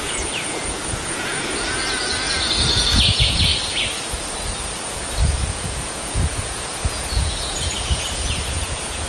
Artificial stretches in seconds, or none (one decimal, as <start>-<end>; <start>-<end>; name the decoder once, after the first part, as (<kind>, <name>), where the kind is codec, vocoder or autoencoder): 0.0-3.5 (vocoder, Vocos); 5.2-9.1